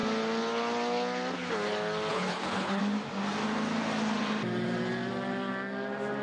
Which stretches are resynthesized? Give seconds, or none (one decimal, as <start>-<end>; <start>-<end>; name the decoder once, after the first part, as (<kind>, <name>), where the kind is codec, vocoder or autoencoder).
2.1-2.8 (codec, HILCodec)